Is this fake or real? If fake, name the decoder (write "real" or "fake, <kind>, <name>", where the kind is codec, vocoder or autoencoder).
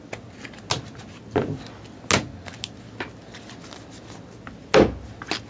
real